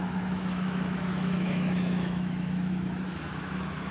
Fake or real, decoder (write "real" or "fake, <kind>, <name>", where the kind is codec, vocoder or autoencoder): fake, autoencoder, DAC-VAE